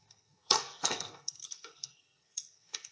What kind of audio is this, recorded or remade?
remade